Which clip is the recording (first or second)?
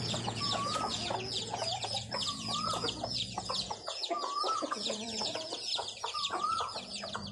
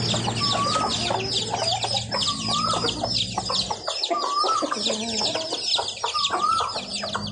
second